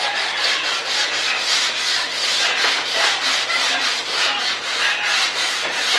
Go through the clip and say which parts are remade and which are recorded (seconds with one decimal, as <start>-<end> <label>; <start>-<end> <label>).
0.0-2.2 recorded; 2.2-4.4 remade; 4.4-6.0 recorded